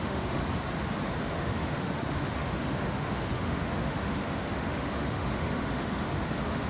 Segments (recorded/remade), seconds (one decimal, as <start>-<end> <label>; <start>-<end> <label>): 0.0-0.4 remade; 0.4-1.2 recorded; 1.2-6.7 remade